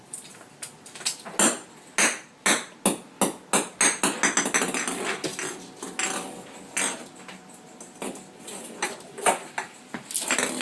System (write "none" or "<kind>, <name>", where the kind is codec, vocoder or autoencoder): none